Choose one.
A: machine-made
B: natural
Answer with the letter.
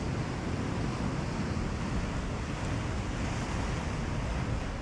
B